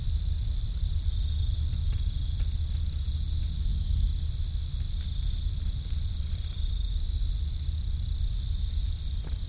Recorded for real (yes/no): yes